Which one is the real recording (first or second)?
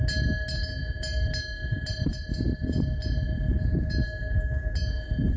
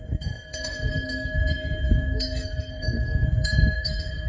first